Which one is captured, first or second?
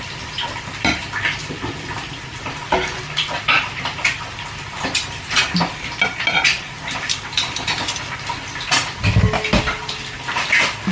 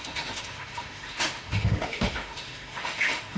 first